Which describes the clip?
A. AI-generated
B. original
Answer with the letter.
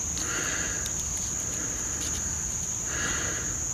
B